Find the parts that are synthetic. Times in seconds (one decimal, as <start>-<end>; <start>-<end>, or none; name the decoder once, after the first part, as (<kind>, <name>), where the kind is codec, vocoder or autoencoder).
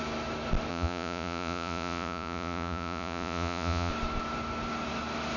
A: 0.7-3.9 (vocoder, Vocos)